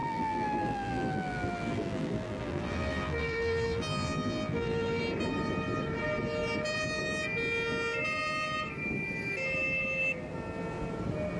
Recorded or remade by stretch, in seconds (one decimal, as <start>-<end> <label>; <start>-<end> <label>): 0.0-5.0 remade; 5.0-11.4 recorded